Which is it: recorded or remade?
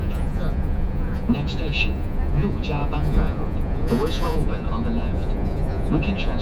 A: remade